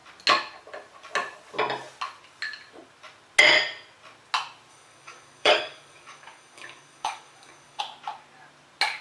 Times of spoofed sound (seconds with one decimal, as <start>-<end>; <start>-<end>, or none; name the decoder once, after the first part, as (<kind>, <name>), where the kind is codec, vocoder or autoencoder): 4.7-7.8 (codec, DAC)